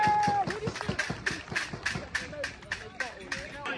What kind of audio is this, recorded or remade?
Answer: recorded